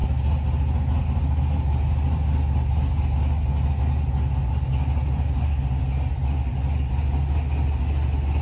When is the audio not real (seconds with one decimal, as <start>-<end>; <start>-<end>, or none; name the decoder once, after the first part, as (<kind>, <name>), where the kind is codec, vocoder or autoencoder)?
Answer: none